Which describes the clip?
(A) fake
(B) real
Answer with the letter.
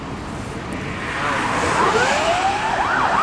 B